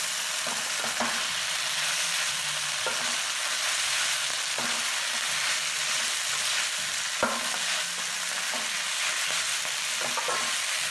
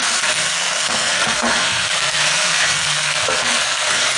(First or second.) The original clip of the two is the first